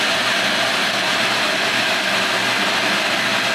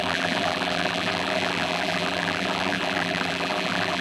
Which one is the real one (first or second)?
first